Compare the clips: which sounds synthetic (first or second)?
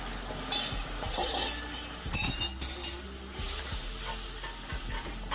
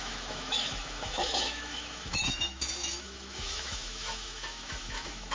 second